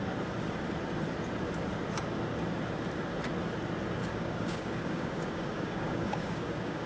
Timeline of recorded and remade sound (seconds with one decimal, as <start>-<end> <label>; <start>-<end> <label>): 0.0-4.1 recorded; 4.1-6.9 remade